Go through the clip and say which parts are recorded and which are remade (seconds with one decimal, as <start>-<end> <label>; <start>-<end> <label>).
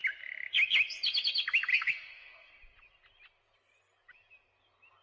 0.0-1.7 recorded; 1.7-2.5 remade; 2.5-5.0 recorded